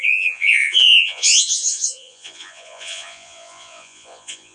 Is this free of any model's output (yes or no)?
no